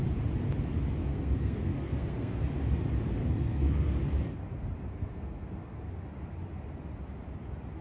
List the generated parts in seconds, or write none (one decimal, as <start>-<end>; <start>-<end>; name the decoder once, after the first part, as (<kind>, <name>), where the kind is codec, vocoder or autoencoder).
1.0-2.4 (codec, SNAC); 3.2-4.0; 4.9-5.9